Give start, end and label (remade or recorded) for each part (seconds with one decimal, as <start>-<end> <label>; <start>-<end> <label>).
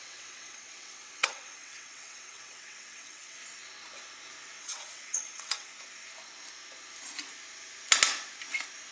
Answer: 0.0-3.4 remade; 3.4-4.6 recorded; 4.6-5.7 remade; 5.7-8.9 recorded